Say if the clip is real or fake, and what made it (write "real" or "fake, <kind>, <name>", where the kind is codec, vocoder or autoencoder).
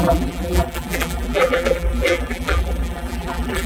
fake, vocoder, BigVGAN v2